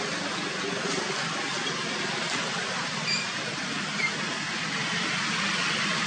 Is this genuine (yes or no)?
yes